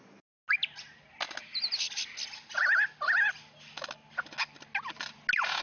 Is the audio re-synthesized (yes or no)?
no